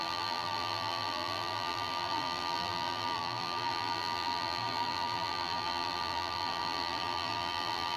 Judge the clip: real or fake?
fake